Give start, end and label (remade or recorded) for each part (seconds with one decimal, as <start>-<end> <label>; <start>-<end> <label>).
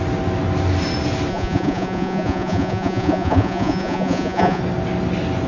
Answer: 0.0-1.3 recorded; 1.3-4.6 remade; 4.6-5.5 recorded